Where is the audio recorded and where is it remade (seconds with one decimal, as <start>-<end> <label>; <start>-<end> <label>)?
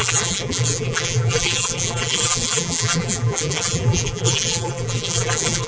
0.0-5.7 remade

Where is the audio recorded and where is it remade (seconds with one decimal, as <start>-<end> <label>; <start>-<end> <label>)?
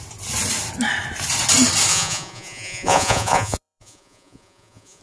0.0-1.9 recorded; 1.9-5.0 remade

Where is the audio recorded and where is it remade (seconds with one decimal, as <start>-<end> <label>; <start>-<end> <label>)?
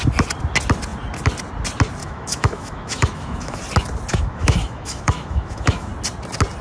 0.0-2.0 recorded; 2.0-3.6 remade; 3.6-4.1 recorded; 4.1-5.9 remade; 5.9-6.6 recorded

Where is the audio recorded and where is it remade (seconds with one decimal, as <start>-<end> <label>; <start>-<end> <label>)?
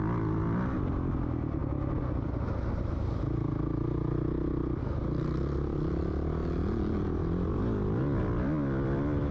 0.0-9.3 recorded